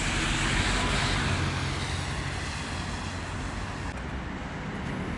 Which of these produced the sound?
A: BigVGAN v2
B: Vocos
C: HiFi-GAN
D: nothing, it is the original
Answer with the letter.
D